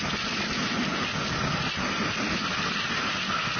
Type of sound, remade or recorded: recorded